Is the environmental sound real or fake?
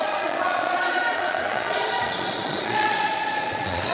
fake